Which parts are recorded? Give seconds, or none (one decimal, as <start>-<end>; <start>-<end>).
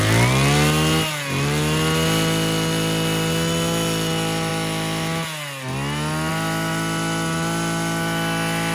0.0-8.7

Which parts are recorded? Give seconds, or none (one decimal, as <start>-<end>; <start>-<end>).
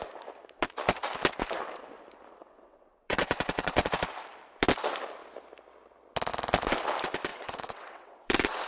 0.0-2.4; 3.9-7.3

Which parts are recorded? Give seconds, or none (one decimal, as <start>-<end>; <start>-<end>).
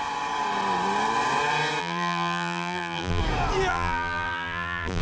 0.0-1.8; 3.2-3.7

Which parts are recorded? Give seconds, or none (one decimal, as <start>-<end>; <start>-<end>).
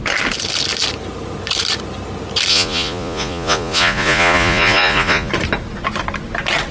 0.0-2.5; 5.3-6.7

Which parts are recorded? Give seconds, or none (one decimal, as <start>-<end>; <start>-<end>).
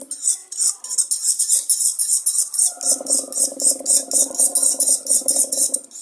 0.0-6.0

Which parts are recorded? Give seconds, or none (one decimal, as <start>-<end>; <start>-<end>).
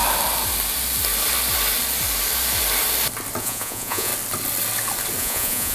0.0-3.4; 4.1-5.2